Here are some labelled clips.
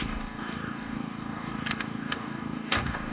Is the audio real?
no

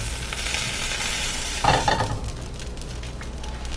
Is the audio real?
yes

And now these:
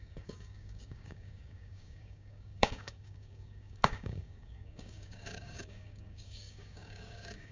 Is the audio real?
no